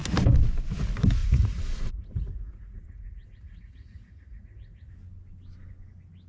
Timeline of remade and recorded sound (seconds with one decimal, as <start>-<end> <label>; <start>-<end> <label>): 0.0-1.2 recorded; 1.2-4.9 remade; 4.9-6.3 recorded